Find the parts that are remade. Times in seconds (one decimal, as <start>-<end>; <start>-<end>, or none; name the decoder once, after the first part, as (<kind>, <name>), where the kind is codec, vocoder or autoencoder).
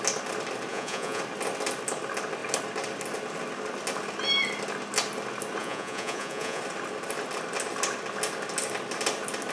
0.7-1.2 (vocoder, Vocos); 5.6-6.6